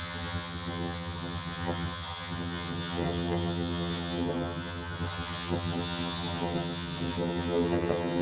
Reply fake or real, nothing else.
fake